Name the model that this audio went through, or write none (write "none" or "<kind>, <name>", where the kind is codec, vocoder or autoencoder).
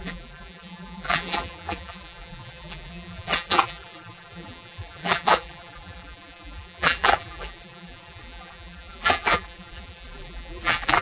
vocoder, BigVGAN v2